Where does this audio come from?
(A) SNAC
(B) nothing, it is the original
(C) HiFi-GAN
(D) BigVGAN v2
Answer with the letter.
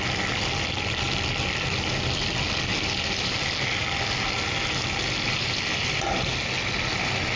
B